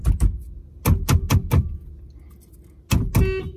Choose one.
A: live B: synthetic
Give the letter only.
A